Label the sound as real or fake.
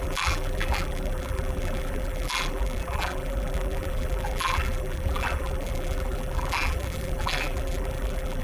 fake